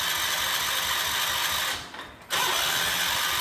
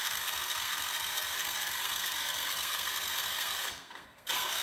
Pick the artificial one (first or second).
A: second